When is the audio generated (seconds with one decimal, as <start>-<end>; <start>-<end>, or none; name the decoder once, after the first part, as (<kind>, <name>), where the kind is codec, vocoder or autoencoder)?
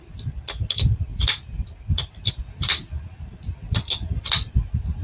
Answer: 0.0-1.1 (vocoder, BigVGAN v2); 1.9-5.0